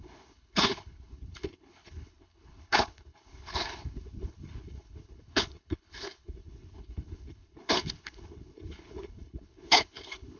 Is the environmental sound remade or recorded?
remade